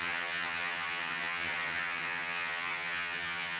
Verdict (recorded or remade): remade